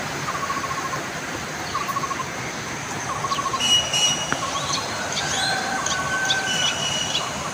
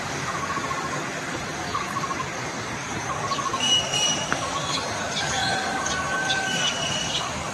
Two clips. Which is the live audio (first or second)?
first